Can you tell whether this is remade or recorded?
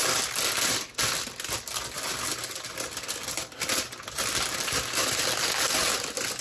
recorded